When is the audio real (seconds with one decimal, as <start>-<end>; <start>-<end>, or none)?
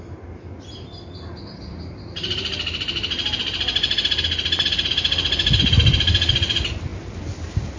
0.0-7.8